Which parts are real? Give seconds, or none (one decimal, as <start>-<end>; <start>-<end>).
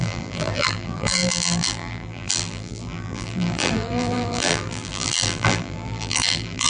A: none